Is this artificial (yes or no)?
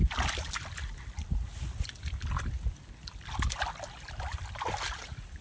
no